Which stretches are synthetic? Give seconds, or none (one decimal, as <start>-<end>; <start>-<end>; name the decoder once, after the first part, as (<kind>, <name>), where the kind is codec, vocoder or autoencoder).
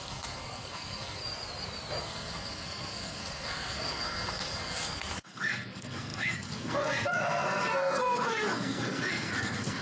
0.0-1.2 (codec, SNAC); 2.0-9.8